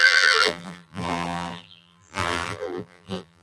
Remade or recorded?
remade